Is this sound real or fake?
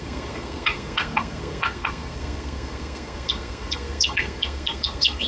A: fake